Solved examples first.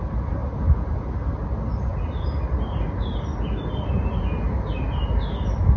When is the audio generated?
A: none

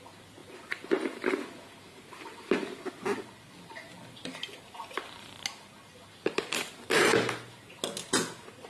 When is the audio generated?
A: none

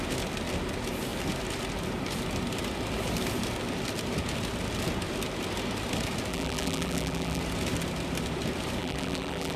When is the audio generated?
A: 6.3-7.4 (vocoder, BigVGAN v2); 8.8-9.6

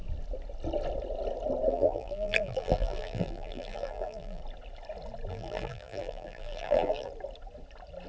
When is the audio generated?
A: 1.7-4.4 (vocoder, BigVGAN v2); 5.3-7.1